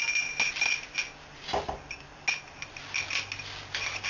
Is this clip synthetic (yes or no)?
no